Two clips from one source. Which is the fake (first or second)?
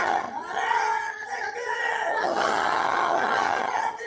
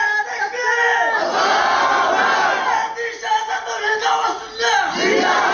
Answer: first